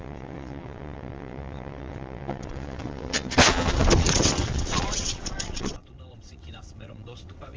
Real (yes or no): no